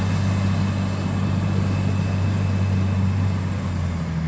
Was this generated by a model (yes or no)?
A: no